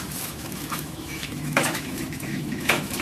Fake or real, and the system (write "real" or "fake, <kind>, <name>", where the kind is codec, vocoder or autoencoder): fake, autoencoder, DAC-VAE